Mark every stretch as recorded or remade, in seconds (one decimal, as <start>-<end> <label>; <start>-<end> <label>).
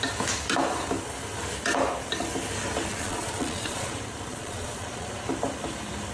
0.0-2.9 recorded; 2.9-3.9 remade; 3.9-4.3 recorded; 4.3-5.1 remade; 5.1-6.1 recorded